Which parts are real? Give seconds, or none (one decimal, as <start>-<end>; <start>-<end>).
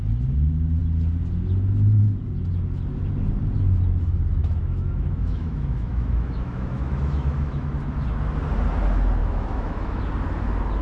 0.0-4.4; 7.7-9.2; 10.0-10.8